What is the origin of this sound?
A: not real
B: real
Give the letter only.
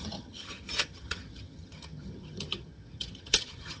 A